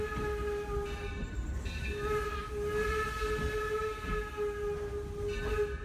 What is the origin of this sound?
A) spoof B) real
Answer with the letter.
B